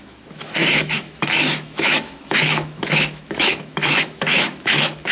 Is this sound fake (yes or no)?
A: yes